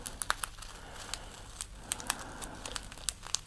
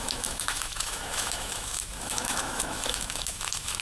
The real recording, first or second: first